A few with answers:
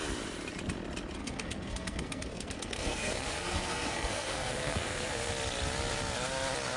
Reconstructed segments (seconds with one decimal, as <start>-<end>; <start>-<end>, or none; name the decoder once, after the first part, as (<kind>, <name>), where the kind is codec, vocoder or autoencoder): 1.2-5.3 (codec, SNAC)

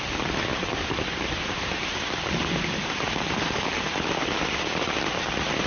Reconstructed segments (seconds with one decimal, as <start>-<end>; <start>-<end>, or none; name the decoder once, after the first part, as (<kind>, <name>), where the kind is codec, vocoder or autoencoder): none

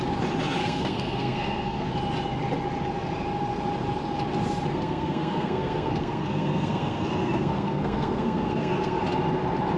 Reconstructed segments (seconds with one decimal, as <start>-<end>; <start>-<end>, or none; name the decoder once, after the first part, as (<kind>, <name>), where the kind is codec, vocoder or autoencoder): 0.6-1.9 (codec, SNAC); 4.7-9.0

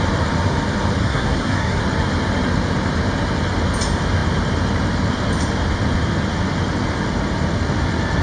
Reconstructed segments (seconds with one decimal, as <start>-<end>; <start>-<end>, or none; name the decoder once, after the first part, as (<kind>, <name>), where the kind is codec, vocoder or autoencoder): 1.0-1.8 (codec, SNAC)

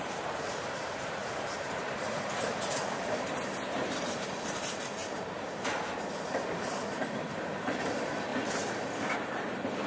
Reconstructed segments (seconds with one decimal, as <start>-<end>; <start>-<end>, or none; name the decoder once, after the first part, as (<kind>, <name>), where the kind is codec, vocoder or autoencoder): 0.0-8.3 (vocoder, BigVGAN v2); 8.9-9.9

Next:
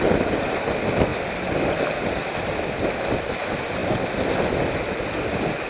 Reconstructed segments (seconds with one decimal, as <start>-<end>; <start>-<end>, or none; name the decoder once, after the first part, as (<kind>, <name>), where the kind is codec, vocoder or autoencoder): none

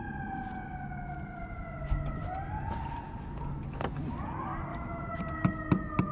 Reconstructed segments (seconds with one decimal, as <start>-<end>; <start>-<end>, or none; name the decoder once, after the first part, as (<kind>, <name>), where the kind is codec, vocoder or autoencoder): 4.7-5.2 (autoencoder, DAC-VAE)